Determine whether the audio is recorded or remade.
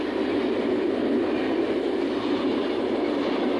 recorded